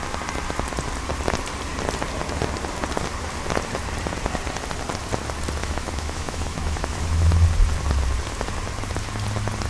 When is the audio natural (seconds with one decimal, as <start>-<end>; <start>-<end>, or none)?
0.0-5.6; 7.3-9.7